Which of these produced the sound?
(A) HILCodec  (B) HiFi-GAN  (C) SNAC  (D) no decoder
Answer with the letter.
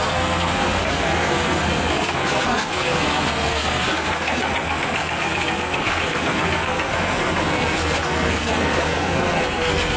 C